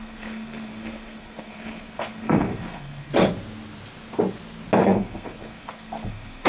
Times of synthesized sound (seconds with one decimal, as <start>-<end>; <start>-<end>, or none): 0.0-3.1; 4.8-6.5